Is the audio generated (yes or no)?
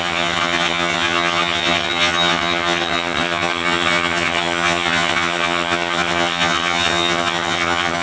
yes